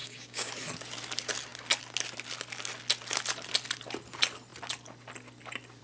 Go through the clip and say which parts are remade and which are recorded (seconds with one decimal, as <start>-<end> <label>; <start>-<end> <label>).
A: 0.0-0.5 remade; 0.5-5.8 recorded